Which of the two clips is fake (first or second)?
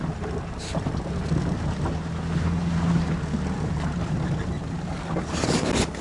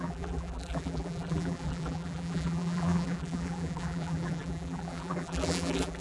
second